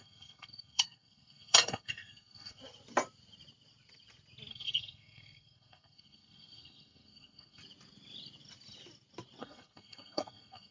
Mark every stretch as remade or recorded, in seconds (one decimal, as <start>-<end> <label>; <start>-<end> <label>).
0.0-2.6 remade; 2.6-4.5 recorded; 4.5-7.6 remade; 7.6-9.4 recorded; 9.4-10.7 remade